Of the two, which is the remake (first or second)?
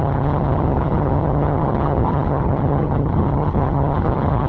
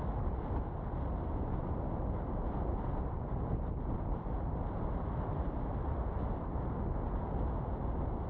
first